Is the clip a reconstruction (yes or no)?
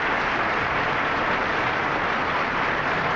no